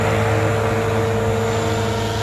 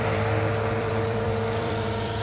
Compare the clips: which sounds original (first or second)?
first